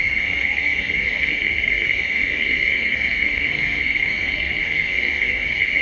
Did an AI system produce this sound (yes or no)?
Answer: yes